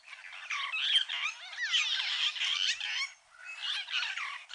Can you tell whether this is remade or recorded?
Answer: recorded